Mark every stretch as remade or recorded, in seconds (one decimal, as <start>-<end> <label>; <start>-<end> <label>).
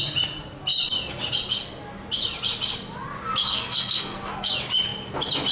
0.0-3.4 recorded; 3.4-4.5 remade; 4.5-5.5 recorded